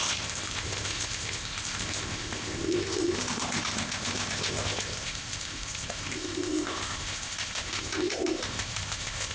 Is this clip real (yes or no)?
no